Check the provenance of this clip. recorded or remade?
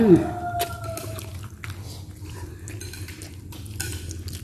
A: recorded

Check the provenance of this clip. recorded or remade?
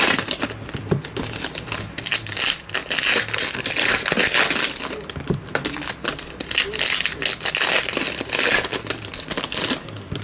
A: recorded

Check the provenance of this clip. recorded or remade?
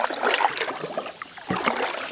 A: recorded